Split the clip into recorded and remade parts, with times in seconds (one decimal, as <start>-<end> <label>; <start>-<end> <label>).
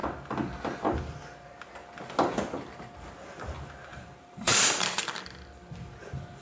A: 0.0-3.9 recorded; 3.9-5.2 remade; 5.2-6.4 recorded